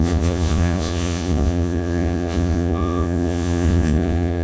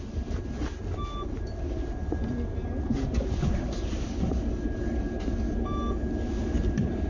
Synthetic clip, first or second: first